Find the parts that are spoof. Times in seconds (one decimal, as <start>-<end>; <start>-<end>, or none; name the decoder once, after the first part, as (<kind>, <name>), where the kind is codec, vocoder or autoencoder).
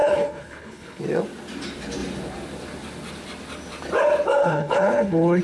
0.0-1.0 (codec, HILCodec); 4.4-5.4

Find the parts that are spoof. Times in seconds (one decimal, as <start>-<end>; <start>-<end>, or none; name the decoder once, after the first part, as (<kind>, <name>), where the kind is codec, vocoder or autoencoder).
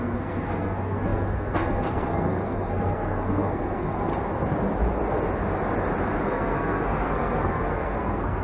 0.0-4.1 (codec, SNAC); 6.2-8.4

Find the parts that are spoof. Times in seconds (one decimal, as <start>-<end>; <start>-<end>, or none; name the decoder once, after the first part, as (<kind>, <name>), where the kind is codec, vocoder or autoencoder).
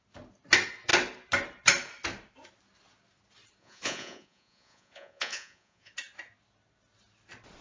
3.6-5.9 (vocoder, Vocos)